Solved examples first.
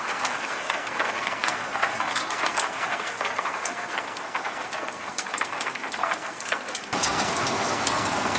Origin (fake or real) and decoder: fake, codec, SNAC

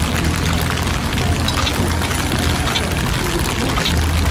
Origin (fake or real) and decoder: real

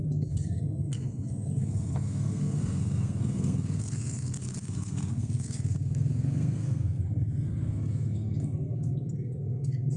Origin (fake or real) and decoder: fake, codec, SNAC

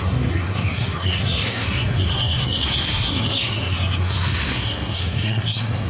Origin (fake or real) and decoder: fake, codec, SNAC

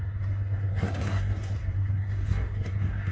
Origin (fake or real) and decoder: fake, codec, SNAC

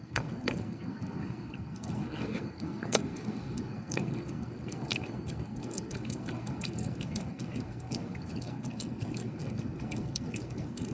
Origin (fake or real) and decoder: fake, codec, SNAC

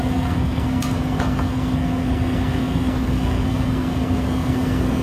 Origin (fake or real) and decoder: fake, codec, SNAC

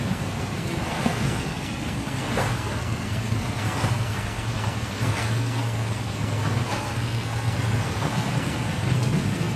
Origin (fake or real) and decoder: fake, codec, SNAC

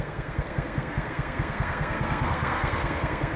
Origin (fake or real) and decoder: fake, codec, SNAC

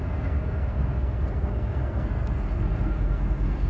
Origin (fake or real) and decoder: fake, codec, SNAC